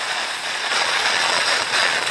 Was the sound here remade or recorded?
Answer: remade